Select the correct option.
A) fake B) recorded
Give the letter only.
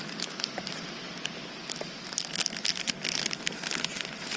B